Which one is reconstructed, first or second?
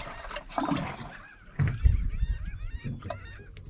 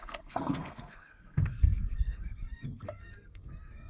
second